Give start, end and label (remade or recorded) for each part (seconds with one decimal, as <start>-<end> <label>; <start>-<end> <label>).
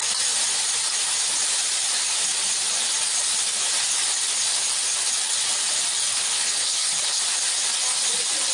0.0-6.1 recorded; 6.1-7.2 remade; 7.2-8.5 recorded